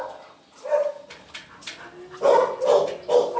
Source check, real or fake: real